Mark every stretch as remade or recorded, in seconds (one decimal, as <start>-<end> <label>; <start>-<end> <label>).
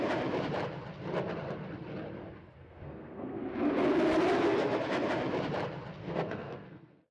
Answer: 0.0-2.6 recorded; 2.6-3.4 remade; 3.4-6.0 recorded; 6.0-7.1 remade